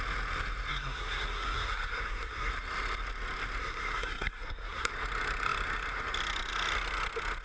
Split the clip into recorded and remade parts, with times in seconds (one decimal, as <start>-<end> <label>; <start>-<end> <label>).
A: 0.0-0.7 recorded; 0.7-2.5 remade; 2.5-3.6 recorded; 3.6-4.9 remade; 4.9-7.4 recorded